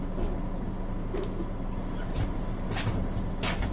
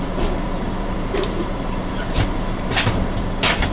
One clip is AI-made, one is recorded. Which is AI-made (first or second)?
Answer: second